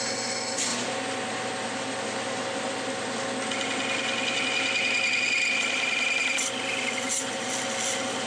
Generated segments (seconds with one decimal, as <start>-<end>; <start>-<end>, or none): none